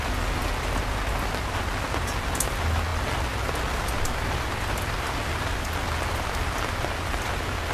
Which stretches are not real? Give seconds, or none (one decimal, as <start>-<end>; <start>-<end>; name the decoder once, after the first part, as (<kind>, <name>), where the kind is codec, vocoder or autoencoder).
none